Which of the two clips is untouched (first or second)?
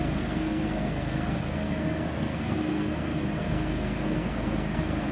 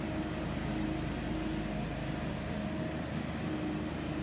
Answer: second